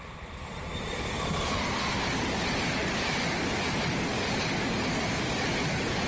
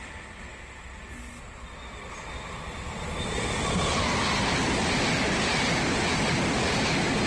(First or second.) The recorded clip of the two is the second